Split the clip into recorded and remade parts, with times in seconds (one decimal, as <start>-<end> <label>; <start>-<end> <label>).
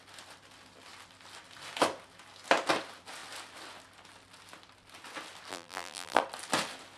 0.0-5.5 recorded; 5.5-6.2 remade; 6.2-7.0 recorded